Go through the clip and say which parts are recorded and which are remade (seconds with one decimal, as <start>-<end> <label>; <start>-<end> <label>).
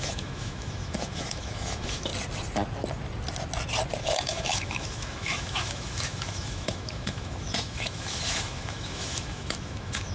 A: 0.0-2.1 remade; 2.1-4.0 recorded; 4.0-10.1 remade